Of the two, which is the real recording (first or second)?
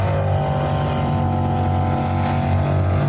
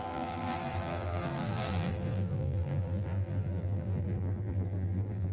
first